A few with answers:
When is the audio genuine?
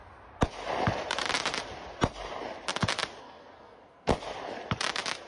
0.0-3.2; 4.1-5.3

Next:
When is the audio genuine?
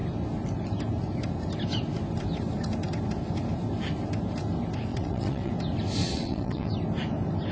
0.0-4.9; 5.5-6.0; 6.7-7.5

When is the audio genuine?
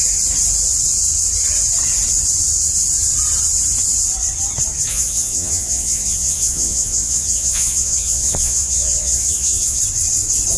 0.0-4.9; 9.8-10.6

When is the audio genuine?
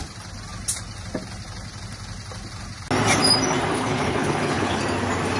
0.0-3.7; 4.8-5.4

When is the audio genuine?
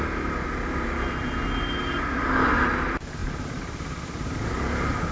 0.0-5.1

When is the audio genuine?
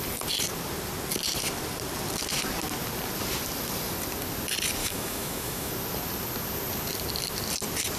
0.0-4.8; 5.7-8.0